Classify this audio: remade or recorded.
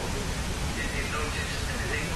recorded